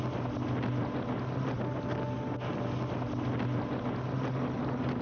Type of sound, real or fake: real